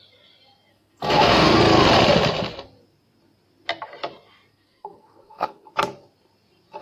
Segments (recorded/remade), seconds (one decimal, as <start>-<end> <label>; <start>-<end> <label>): 0.0-0.7 recorded; 0.7-1.6 remade; 1.6-4.5 recorded; 4.5-5.7 remade; 5.7-6.8 recorded